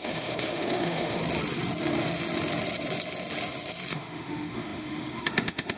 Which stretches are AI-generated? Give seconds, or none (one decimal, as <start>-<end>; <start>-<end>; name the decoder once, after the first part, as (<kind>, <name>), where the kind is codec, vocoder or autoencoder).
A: 0.0-1.2 (autoencoder, DAC-VAE); 3.9-5.8